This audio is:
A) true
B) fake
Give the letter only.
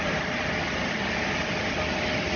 A